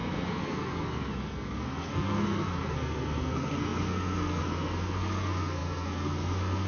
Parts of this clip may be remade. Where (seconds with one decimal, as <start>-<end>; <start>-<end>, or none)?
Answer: 0.0-6.7